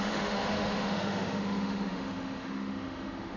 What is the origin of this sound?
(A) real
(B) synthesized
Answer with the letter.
B